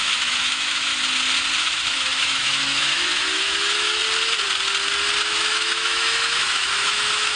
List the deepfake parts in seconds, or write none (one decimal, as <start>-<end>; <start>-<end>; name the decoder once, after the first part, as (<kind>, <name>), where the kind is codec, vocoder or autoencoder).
0.0-0.9 (autoencoder, DAC-VAE); 1.6-4.0; 5.2-7.4